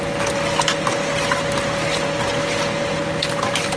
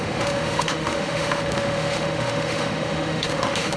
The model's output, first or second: second